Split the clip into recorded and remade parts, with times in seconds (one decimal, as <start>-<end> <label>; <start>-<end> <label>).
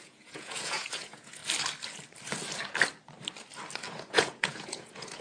0.0-1.4 remade; 1.4-3.9 recorded; 3.9-5.2 remade